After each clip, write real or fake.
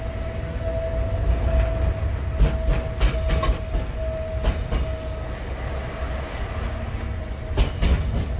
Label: real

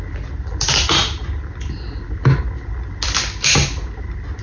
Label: real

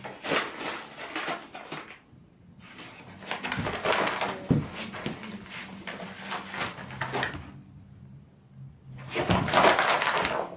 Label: real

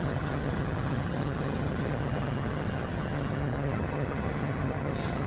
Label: fake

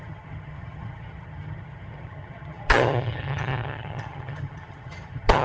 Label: fake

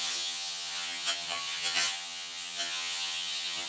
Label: fake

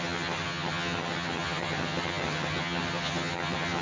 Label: fake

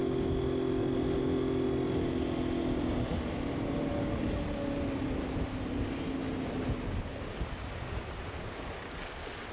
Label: real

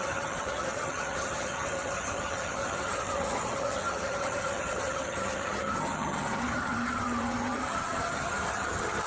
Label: fake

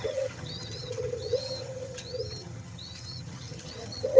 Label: fake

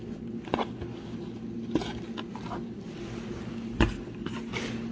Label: real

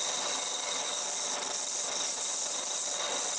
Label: real